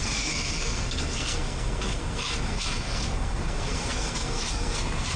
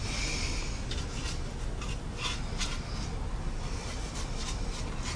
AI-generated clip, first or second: first